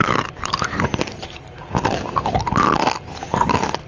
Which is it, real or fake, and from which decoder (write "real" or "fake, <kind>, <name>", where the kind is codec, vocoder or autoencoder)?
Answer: real